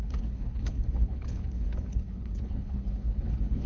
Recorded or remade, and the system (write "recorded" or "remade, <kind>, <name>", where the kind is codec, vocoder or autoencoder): remade, codec, HILCodec